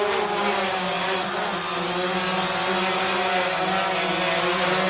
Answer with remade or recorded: recorded